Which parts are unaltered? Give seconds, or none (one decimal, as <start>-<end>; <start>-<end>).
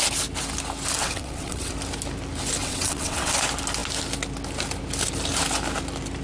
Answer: 0.0-1.0; 1.7-2.6; 3.3-6.2